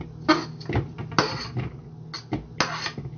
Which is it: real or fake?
real